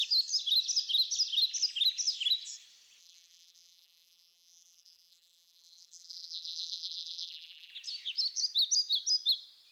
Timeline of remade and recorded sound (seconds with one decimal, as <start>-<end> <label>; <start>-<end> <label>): 0.0-3.0 recorded; 3.0-7.7 remade; 7.7-9.7 recorded

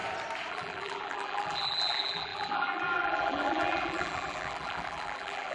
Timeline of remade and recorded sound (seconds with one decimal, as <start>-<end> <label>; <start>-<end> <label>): 0.0-0.5 recorded; 0.5-5.5 remade